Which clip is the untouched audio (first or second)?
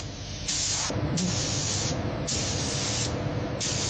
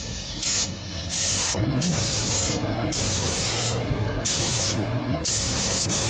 first